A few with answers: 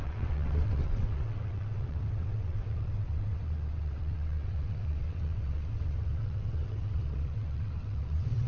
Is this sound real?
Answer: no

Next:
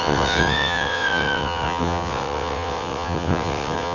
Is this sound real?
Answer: no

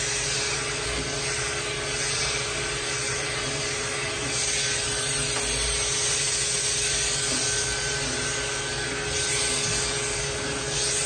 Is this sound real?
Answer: yes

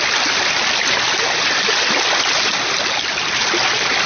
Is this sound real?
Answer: yes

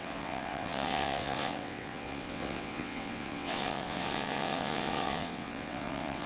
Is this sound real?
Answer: no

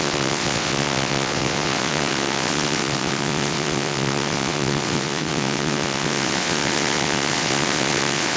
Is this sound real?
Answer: no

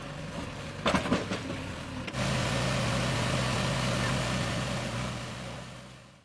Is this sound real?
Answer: yes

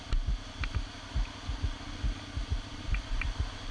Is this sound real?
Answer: yes